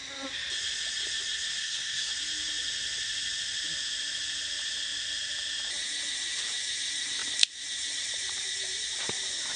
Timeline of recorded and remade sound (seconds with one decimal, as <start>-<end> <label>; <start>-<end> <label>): 0.0-1.6 recorded; 1.6-2.1 remade; 2.1-9.6 recorded